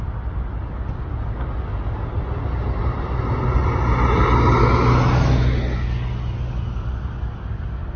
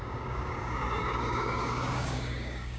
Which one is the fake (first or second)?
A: second